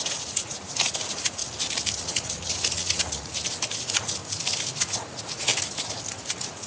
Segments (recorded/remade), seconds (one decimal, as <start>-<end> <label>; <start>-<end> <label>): 0.0-1.4 remade; 1.4-2.0 recorded; 2.0-3.3 remade; 3.3-3.8 recorded; 3.8-4.2 remade; 4.2-4.8 recorded; 4.8-5.5 remade; 5.5-6.1 recorded; 6.1-6.7 remade